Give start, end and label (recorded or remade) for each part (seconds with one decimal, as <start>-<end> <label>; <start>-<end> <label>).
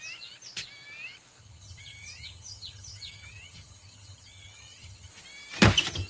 0.0-1.4 recorded; 1.4-5.1 remade; 5.1-6.1 recorded